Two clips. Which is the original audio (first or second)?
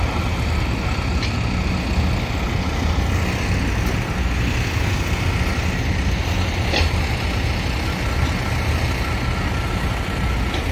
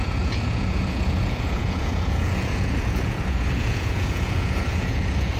first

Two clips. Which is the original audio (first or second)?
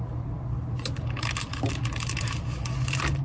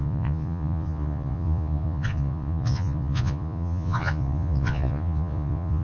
first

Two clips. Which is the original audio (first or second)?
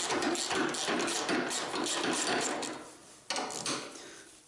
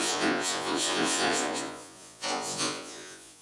first